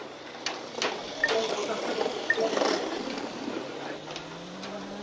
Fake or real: real